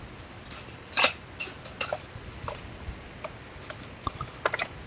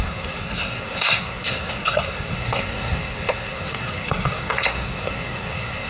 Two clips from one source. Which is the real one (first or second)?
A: first